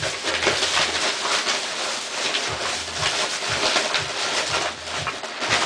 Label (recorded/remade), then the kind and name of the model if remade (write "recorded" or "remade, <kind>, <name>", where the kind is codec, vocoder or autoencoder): recorded